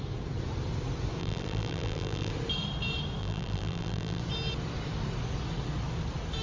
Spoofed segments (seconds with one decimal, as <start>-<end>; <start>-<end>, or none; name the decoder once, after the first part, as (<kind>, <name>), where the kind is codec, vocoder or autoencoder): 1.2-2.3 (vocoder, BigVGAN v2); 3.2-4.2